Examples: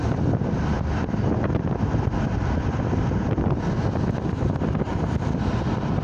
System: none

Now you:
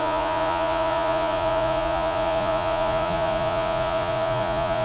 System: vocoder, Vocos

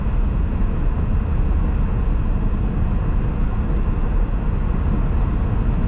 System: none